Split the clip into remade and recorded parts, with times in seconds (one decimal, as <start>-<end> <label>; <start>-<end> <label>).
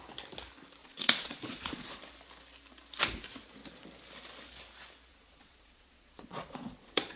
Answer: 0.0-0.8 recorded; 0.8-2.0 remade; 2.0-5.1 recorded; 5.1-7.2 remade